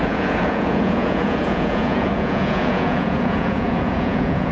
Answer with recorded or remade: remade